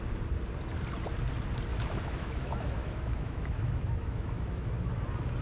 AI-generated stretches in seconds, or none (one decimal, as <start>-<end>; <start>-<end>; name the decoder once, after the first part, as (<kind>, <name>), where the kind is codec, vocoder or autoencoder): 1.7-4.9 (autoencoder, DAC-VAE)